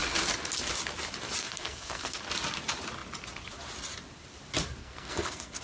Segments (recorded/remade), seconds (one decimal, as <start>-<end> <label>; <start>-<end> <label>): 0.0-1.4 recorded; 1.4-2.2 remade; 2.2-4.8 recorded; 4.8-5.6 remade